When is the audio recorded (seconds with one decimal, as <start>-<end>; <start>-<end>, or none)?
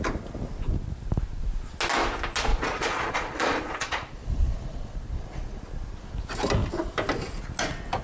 0.0-2.5; 5.6-8.0